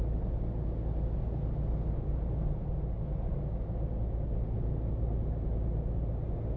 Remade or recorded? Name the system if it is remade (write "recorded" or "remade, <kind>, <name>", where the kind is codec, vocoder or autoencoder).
recorded